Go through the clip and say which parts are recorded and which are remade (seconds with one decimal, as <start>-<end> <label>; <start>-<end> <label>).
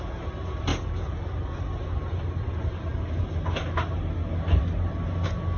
0.0-5.6 recorded